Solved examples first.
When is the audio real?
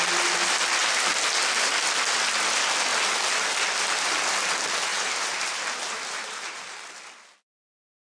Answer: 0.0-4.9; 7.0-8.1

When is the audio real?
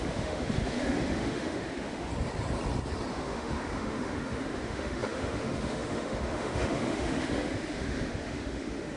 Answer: 2.1-3.1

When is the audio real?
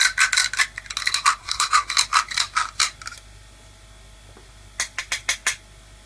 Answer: 0.0-1.4; 1.9-6.1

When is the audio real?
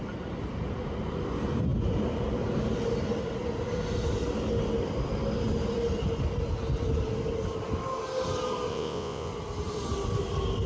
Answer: 0.0-8.7; 9.3-10.7